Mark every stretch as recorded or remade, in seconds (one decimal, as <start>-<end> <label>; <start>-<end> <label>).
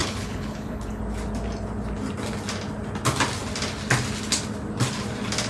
0.0-1.0 remade; 1.0-5.5 recorded